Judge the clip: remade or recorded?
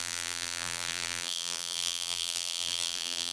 remade